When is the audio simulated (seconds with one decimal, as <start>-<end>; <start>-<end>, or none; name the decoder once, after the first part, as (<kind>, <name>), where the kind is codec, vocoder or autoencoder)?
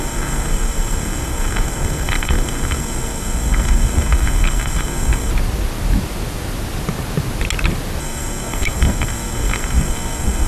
0.0-5.3 (codec, SNAC); 8.0-10.5